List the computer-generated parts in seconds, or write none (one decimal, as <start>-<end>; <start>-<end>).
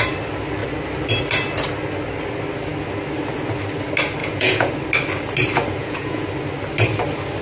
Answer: 4.2-4.7; 5.8-6.3